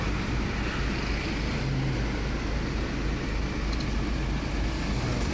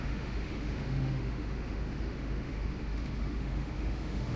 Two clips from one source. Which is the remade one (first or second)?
second